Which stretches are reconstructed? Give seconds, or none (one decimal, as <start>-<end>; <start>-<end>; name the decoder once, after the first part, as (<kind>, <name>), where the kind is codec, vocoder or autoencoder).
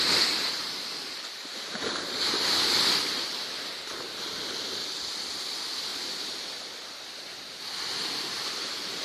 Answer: 0.0-5.9 (vocoder, BigVGAN v2); 8.5-9.0